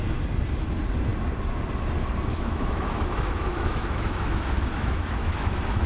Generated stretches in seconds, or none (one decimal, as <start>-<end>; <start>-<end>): 2.3-5.9